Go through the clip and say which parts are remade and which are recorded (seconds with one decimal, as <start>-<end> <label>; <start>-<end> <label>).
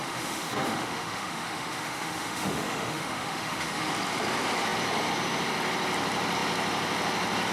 0.0-3.9 remade; 3.9-7.5 recorded